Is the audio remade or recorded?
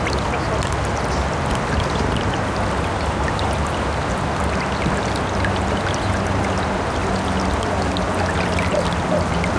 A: recorded